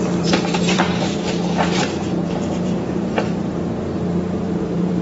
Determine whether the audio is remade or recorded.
remade